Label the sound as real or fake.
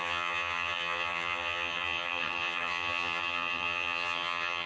fake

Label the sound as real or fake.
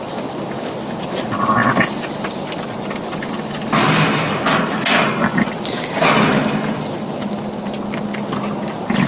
real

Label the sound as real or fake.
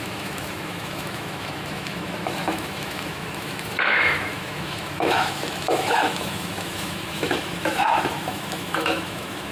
fake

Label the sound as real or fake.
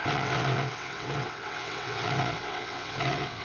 fake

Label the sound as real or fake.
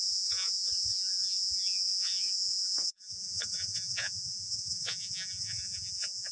fake